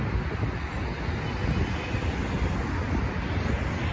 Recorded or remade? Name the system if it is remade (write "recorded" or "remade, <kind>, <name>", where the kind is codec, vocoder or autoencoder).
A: recorded